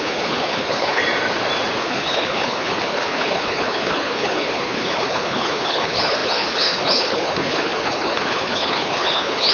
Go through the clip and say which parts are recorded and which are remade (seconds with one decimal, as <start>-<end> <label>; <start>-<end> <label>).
0.0-1.0 remade; 1.0-1.8 recorded; 1.8-9.5 remade

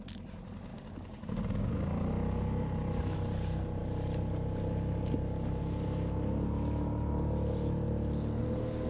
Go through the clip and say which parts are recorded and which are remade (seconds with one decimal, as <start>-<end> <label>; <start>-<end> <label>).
0.0-0.7 recorded; 0.7-2.1 remade; 2.1-8.9 recorded